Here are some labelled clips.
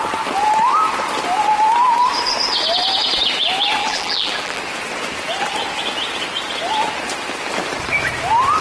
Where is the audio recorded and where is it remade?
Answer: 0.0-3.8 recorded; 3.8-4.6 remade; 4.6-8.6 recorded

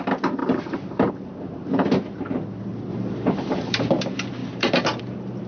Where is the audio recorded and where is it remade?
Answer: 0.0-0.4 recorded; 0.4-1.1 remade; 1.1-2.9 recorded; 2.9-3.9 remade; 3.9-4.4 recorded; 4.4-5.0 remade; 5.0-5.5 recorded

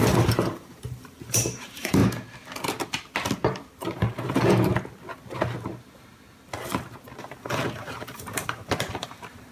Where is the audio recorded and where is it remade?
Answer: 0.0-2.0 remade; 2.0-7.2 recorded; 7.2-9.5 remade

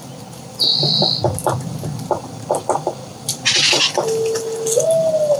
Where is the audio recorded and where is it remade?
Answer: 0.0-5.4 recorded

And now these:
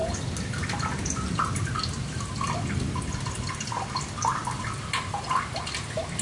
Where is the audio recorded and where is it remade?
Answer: 0.0-3.1 remade; 3.1-4.4 recorded; 4.4-5.3 remade; 5.3-6.2 recorded